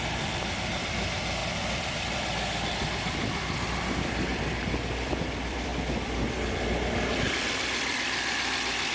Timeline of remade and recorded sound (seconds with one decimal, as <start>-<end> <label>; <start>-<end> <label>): 0.0-5.7 remade; 5.7-7.3 recorded; 7.3-8.9 remade